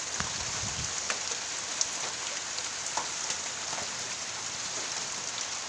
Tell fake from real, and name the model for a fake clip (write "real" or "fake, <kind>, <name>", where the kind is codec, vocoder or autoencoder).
fake, vocoder, BigVGAN v2